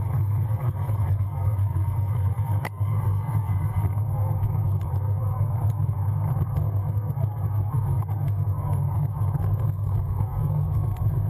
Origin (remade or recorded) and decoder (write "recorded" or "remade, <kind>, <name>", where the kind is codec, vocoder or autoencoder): remade, codec, SNAC